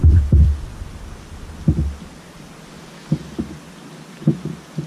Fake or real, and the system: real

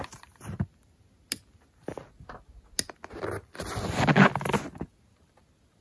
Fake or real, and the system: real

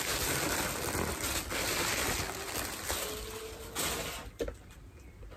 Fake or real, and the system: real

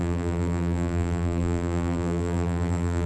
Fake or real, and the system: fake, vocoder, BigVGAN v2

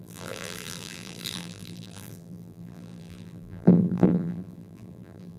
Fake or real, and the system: fake, vocoder, BigVGAN v2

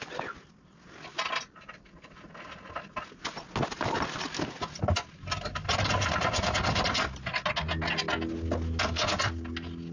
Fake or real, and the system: real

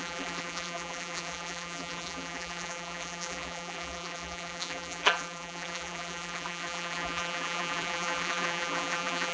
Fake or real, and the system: fake, vocoder, BigVGAN v2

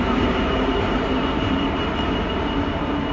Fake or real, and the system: fake, vocoder, BigVGAN v2